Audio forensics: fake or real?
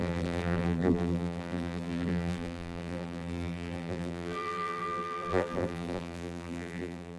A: fake